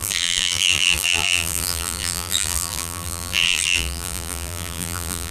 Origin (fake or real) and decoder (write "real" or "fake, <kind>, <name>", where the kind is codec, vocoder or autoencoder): fake, vocoder, BigVGAN v2